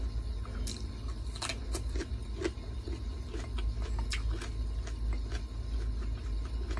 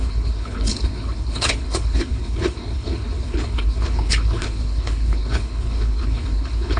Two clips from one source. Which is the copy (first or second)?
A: second